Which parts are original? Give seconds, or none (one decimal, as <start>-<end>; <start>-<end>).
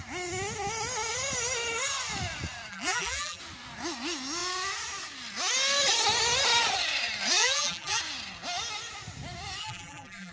0.0-2.7; 3.4-7.4; 8.0-9.6